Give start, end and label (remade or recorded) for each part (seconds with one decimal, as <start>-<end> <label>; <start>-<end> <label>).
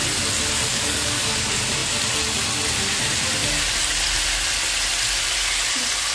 0.0-0.7 recorded; 0.7-1.2 remade; 1.2-6.1 recorded